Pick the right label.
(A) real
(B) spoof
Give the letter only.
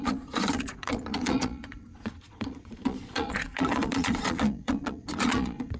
B